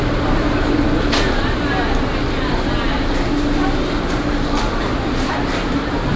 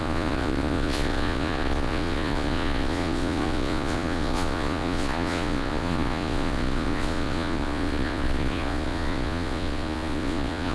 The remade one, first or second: second